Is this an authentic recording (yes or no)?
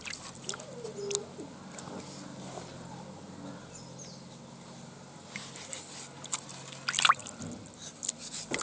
yes